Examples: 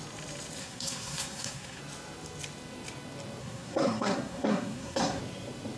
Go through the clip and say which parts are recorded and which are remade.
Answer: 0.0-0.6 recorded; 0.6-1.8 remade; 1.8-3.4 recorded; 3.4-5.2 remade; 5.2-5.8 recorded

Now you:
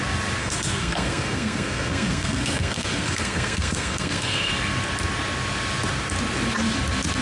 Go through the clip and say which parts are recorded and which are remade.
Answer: 0.0-0.4 recorded; 0.4-4.5 remade; 4.5-7.2 recorded

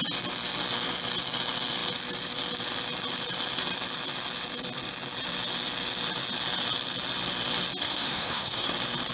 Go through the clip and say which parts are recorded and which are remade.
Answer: 0.0-7.8 recorded; 7.8-8.7 remade; 8.7-9.1 recorded

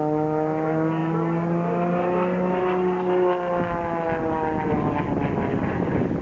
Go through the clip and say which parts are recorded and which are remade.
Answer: 0.0-6.2 recorded